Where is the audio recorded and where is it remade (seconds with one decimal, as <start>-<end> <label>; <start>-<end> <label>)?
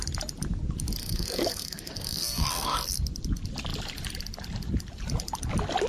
0.0-1.0 recorded; 1.0-2.8 remade; 2.8-5.9 recorded